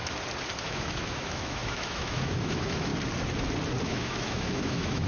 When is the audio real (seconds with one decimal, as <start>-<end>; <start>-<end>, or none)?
0.0-0.6; 2.9-3.8